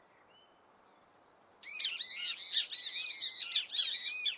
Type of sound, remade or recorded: recorded